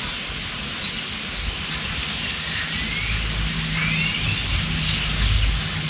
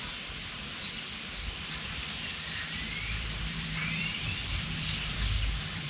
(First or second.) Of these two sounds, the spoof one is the second